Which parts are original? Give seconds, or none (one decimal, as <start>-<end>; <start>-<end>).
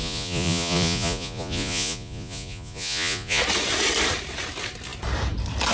3.4-5.7